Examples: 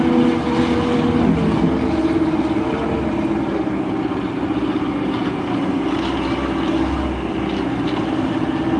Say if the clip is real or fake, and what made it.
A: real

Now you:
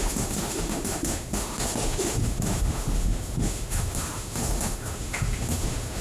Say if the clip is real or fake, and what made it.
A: fake, autoencoder, DAC-VAE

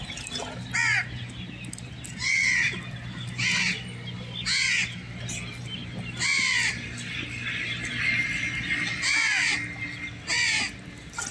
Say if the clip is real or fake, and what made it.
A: real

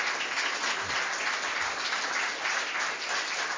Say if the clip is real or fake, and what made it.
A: real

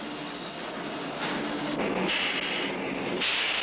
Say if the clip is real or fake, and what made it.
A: real